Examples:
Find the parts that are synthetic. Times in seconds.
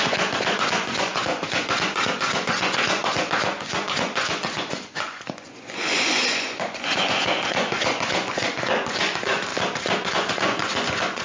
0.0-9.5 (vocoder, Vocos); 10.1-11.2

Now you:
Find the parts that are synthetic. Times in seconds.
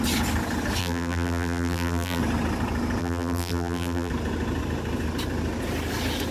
0.8-2.2 (vocoder, BigVGAN v2); 3.0-4.1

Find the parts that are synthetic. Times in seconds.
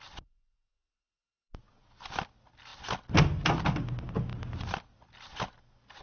none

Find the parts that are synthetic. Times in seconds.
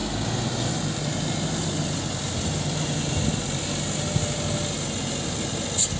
none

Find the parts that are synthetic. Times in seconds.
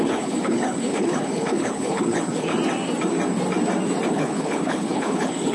0.0-2.5 (codec, HILCodec); 4.1-5.5